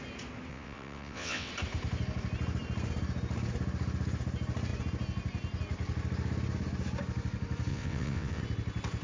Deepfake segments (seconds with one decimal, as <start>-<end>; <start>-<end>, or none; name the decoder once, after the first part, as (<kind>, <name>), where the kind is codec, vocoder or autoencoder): 0.5-1.5 (vocoder, WaveNeXt); 7.7-8.4